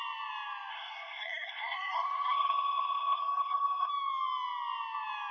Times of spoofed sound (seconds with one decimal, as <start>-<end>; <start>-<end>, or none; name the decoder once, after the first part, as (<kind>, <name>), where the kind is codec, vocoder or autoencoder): 0.7-3.9 (codec, SNAC)

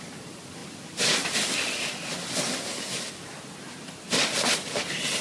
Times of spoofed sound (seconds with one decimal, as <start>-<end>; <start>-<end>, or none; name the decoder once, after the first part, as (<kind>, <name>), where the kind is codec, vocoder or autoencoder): none